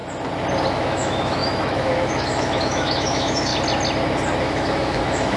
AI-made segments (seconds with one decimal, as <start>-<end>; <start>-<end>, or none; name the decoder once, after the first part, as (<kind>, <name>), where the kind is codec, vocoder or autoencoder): 0.7-3.5 (autoencoder, DAC-VAE); 4.4-5.4